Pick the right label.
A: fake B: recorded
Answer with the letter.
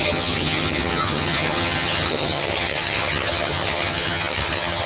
A